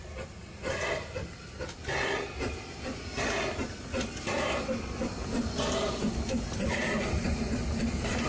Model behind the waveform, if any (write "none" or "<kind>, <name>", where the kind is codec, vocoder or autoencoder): none